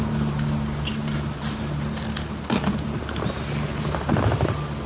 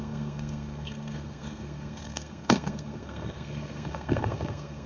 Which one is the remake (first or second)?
second